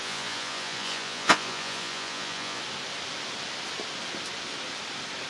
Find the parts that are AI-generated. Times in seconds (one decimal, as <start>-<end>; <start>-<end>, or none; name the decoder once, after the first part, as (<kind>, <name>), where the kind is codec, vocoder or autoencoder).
0.0-2.6 (vocoder, Vocos)